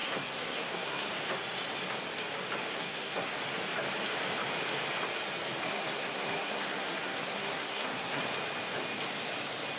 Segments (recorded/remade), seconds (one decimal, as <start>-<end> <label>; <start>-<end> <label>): 0.0-1.1 remade; 1.1-2.7 recorded; 2.7-3.4 remade; 3.4-5.7 recorded; 5.7-8.2 remade; 8.2-9.8 recorded